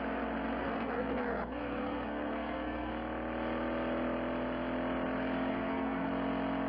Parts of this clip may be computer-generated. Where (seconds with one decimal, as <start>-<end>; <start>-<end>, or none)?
0.6-2.9; 5.5-6.1